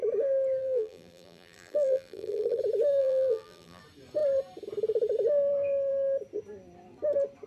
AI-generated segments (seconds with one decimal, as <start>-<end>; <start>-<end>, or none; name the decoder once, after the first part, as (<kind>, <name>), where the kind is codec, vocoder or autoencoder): 0.6-2.6 (vocoder, BigVGAN v2); 3.0-3.8